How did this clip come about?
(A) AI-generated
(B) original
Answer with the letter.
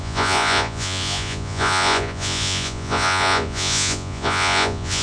A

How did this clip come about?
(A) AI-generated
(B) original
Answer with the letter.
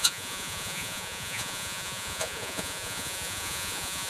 A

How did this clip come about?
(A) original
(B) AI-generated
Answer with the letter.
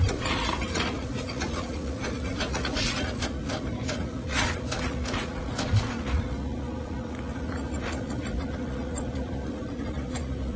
B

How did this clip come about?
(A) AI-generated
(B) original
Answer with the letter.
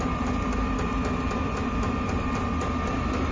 B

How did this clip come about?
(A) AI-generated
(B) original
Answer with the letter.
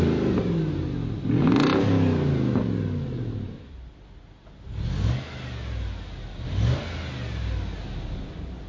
B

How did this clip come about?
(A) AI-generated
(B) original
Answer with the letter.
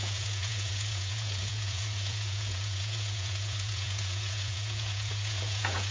A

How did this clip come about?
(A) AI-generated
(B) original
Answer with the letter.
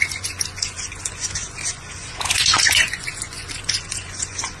A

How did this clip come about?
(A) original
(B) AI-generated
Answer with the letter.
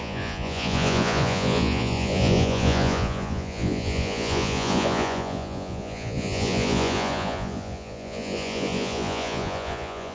B